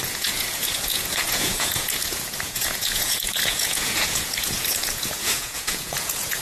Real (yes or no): no